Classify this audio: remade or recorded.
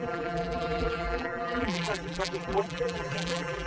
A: remade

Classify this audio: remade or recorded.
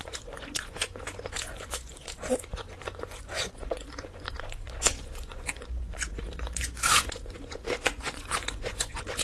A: remade